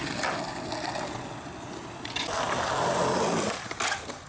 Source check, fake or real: real